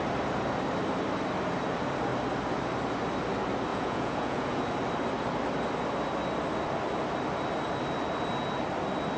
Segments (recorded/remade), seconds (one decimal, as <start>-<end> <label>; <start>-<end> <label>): 0.0-3.7 recorded; 3.7-4.6 remade; 4.6-9.2 recorded